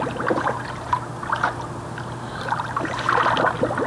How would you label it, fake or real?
real